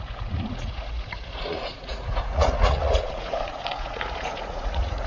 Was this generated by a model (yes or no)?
yes